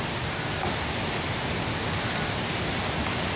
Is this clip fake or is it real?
real